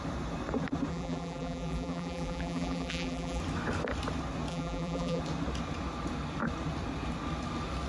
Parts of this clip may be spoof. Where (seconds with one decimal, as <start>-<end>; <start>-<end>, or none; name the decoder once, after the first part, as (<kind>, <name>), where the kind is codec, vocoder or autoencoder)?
0.9-3.4 (vocoder, BigVGAN v2); 4.5-5.2